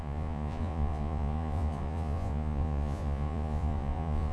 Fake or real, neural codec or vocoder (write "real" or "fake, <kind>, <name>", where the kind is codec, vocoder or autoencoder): fake, vocoder, Vocos